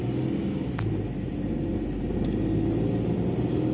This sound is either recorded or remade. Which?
recorded